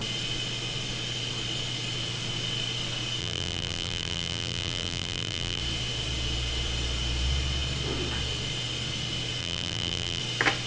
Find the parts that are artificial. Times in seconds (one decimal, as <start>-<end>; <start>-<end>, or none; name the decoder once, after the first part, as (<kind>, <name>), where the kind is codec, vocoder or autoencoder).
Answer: 3.2-5.6 (vocoder, BigVGAN v2); 9.4-10.2